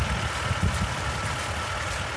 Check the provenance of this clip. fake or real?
real